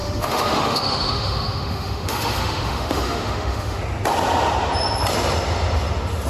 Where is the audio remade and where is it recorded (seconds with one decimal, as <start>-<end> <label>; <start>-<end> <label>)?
0.0-3.8 remade; 3.8-6.3 recorded